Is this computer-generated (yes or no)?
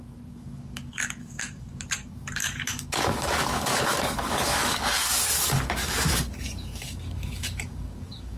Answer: yes